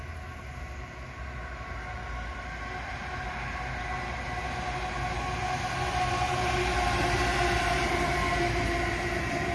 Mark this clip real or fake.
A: real